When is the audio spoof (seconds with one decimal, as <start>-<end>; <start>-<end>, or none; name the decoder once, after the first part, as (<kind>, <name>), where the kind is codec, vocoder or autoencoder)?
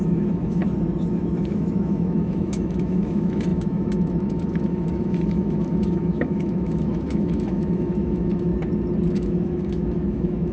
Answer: 0.0-0.6 (autoencoder, DAC-VAE); 1.1-8.5; 9.1-10.5